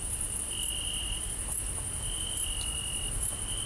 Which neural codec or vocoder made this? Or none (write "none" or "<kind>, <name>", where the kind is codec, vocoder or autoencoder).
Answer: none